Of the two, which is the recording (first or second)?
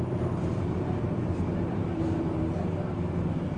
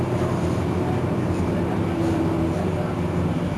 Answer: second